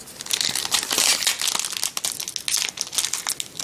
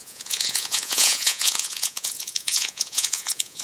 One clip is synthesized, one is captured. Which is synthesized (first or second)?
second